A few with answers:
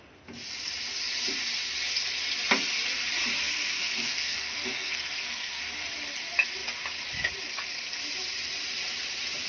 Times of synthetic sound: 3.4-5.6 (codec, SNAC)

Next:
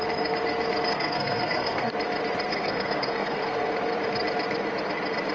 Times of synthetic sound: 0.9-1.9 (codec, SNAC); 2.5-3.7

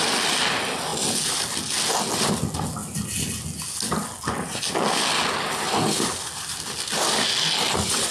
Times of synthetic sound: none

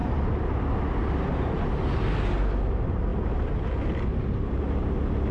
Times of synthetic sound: none

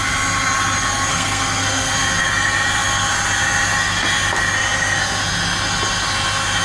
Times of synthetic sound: 1.1-1.9 (codec, SNAC)

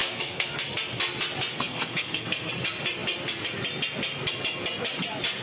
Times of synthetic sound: 0.0-0.6 (codec, SNAC); 1.5-2.5

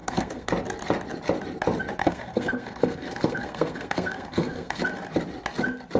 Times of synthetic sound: 0.0-0.5 (codec, SNAC); 2.0-4.8